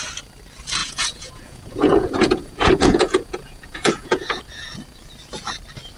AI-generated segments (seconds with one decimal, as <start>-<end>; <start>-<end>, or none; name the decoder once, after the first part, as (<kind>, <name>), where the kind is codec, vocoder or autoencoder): 0.8-4.4 (vocoder, Vocos)